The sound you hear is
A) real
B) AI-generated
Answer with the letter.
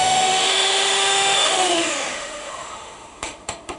B